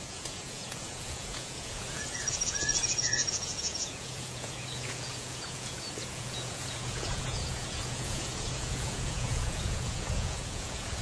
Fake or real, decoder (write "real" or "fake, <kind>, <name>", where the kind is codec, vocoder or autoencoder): fake, vocoder, Vocos